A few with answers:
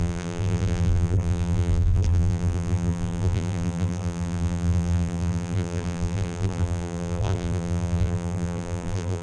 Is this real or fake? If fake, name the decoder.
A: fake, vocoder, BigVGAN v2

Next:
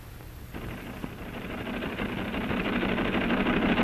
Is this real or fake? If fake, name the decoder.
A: real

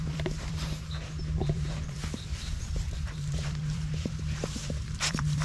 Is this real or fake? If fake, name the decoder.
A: fake, vocoder, BigVGAN v2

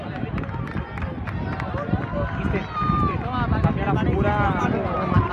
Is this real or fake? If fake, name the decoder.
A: real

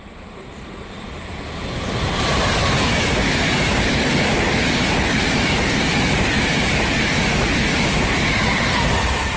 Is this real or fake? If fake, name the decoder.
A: fake, vocoder, BigVGAN v2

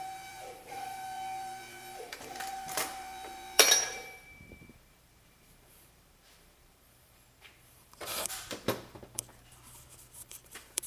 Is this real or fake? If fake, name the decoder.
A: fake, vocoder, BigVGAN v2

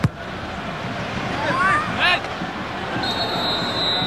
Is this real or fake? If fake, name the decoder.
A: real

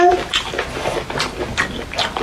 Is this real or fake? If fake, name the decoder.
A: real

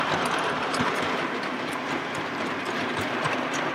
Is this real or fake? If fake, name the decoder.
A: fake, vocoder, BigVGAN v2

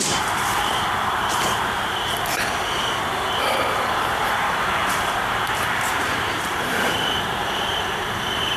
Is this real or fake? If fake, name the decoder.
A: fake, vocoder, BigVGAN v2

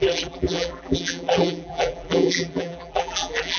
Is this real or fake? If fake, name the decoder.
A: fake, vocoder, BigVGAN v2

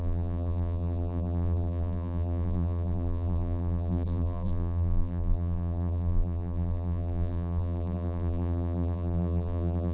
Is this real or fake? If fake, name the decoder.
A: fake, vocoder, BigVGAN v2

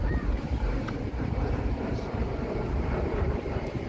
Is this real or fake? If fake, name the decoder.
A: fake, vocoder, BigVGAN v2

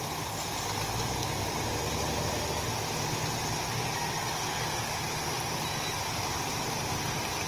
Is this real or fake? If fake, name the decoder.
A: real